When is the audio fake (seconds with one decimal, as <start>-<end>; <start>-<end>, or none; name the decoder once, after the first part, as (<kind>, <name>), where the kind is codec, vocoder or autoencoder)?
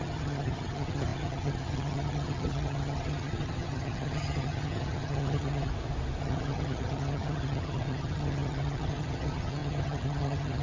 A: 0.0-5.7 (vocoder, HiFi-GAN); 6.2-10.6